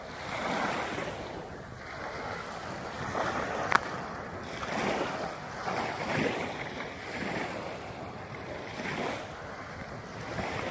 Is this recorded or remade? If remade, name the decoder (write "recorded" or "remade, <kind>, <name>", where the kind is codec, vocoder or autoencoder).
recorded